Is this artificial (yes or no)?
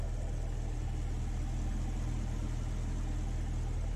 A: no